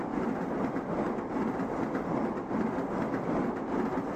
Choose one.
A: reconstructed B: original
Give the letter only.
B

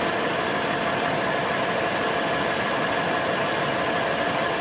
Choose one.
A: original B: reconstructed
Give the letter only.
A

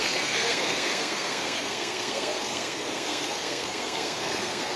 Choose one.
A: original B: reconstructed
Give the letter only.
B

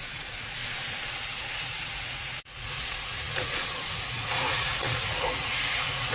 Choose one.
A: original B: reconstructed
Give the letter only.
B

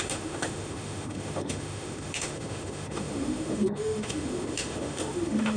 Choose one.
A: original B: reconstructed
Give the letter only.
B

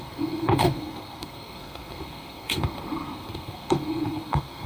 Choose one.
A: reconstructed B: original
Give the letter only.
A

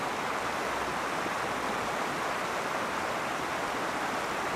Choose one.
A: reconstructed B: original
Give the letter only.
B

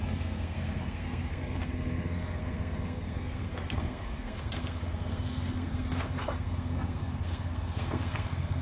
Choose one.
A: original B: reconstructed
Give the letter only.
B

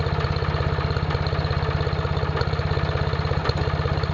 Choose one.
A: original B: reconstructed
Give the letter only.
A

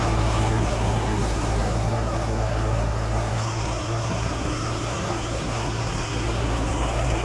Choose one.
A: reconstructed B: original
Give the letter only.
A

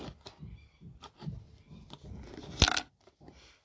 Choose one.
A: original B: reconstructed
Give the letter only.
A